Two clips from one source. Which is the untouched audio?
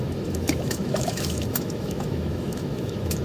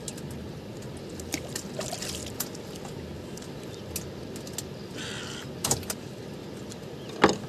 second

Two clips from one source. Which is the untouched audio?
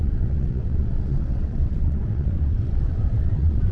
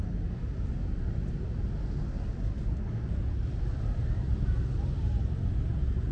second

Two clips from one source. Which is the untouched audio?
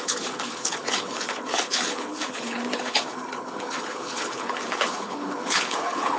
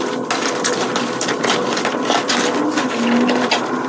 second